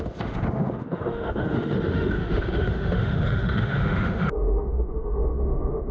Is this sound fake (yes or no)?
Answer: yes